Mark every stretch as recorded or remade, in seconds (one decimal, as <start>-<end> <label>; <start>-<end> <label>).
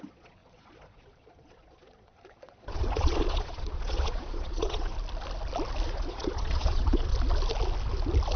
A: 0.0-4.9 remade; 4.9-5.9 recorded; 5.9-7.1 remade; 7.1-8.4 recorded